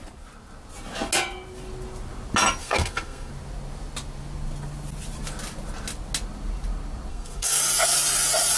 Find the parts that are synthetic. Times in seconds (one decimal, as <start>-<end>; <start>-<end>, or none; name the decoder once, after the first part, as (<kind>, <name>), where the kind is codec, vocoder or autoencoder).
2.6-3.3 (codec, SNAC); 7.1-7.6